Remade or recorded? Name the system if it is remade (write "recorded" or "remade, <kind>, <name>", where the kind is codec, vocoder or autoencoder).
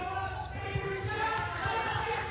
recorded